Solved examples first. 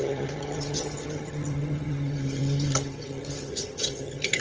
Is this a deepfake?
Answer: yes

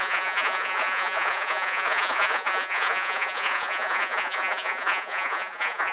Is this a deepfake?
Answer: yes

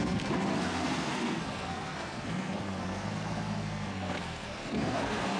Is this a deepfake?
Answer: yes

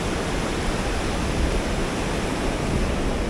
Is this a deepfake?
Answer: no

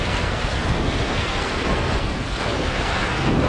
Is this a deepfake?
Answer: yes